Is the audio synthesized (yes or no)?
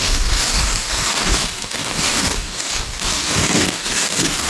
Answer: yes